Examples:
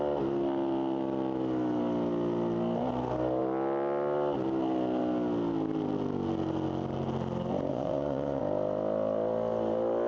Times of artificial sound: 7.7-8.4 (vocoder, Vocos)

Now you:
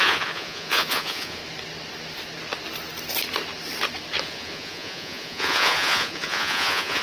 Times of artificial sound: 0.0-1.4 (vocoder, Vocos); 4.2-7.0

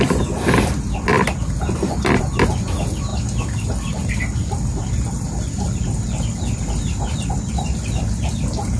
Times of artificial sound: none

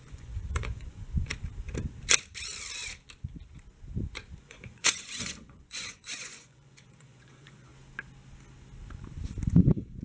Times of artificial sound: 0.0-1.3 (vocoder, Vocos); 4.4-7.7; 9.5-10.0

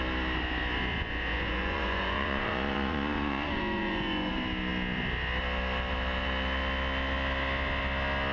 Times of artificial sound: 0.9-4.3 (vocoder, Vocos)

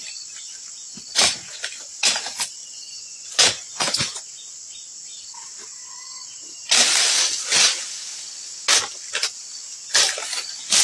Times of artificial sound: 2.6-4.2 (vocoder, Vocos)

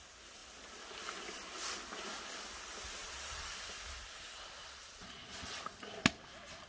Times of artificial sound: 3.0-3.5 (vocoder, Vocos); 4.6-5.6

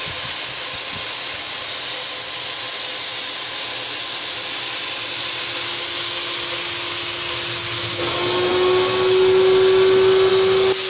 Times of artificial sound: none